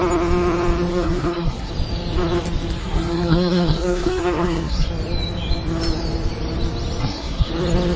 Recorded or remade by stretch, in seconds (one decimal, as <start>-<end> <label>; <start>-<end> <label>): 0.0-0.9 recorded; 0.9-1.7 remade; 1.7-2.8 recorded; 2.8-4.9 remade; 4.9-7.0 recorded; 7.0-7.5 remade; 7.5-8.0 recorded